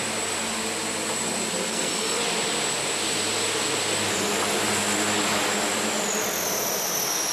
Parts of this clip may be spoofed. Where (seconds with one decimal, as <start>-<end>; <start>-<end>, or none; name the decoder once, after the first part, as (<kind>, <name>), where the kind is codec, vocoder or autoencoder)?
1.7-2.2 (codec, SNAC)